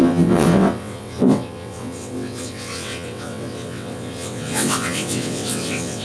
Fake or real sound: fake